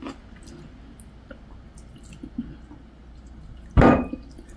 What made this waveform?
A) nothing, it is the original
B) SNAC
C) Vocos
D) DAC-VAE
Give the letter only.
A